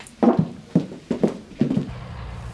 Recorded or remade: recorded